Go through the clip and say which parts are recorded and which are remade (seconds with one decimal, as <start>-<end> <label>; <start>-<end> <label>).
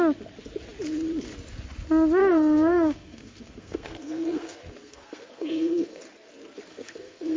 0.0-2.2 recorded; 2.2-6.0 remade; 6.0-6.7 recorded; 6.7-7.4 remade